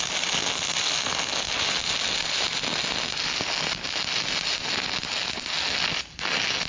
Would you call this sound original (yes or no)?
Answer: yes